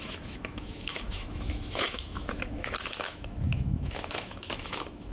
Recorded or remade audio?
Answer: remade